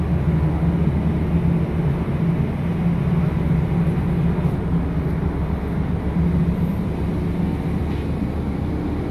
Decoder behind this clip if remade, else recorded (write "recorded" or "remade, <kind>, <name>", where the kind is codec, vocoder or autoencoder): recorded